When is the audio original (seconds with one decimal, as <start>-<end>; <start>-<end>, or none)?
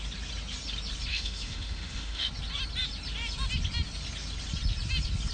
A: 0.0-1.1; 2.3-5.3